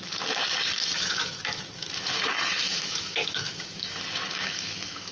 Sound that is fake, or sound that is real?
fake